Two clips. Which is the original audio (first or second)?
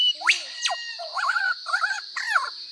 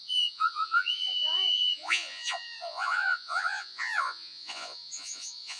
first